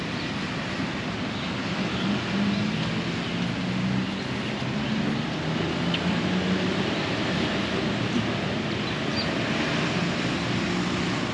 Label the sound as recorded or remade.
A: recorded